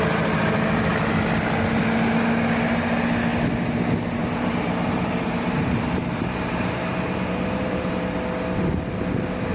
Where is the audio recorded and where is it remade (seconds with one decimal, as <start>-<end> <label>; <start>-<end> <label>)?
0.0-4.2 recorded; 4.2-7.9 remade; 7.9-9.5 recorded